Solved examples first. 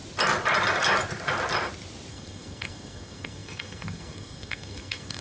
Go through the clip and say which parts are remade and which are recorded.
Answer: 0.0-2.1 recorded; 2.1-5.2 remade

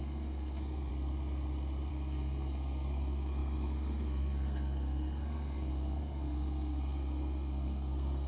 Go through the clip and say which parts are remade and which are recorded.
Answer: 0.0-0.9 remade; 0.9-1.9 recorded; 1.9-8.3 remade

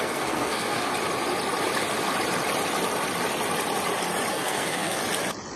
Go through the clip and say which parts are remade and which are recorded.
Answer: 0.0-0.9 remade; 0.9-4.3 recorded; 4.3-5.0 remade; 5.0-5.6 recorded

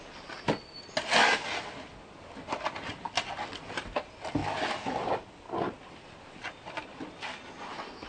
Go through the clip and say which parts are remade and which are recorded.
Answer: 0.0-8.1 recorded

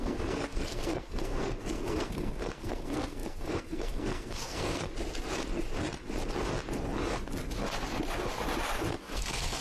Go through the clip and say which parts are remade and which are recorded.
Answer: 0.0-4.9 remade; 4.9-8.9 recorded; 8.9-9.6 remade